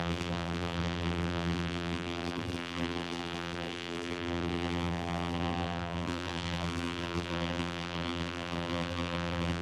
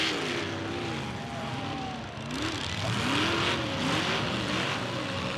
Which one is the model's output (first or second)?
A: first